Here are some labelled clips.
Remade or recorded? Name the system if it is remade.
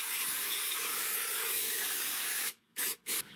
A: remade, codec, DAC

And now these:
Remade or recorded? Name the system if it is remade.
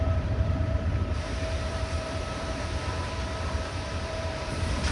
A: remade, vocoder, BigVGAN v2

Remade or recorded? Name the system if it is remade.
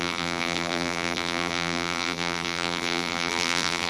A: remade, vocoder, BigVGAN v2